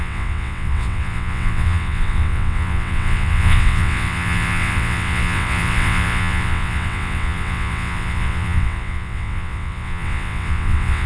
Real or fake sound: fake